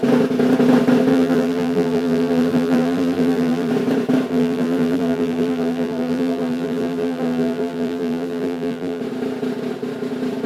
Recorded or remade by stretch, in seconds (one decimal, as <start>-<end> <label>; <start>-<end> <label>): 0.0-1.1 recorded; 1.1-3.7 remade; 3.7-4.3 recorded; 4.3-9.0 remade; 9.0-10.5 recorded